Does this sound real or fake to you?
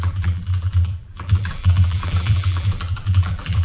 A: fake